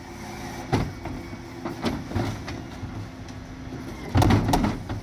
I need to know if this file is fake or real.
real